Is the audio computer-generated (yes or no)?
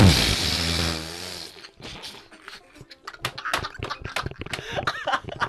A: no